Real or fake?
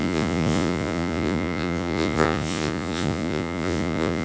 fake